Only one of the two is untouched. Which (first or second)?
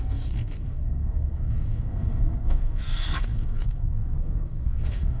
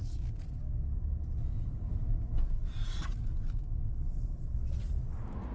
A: second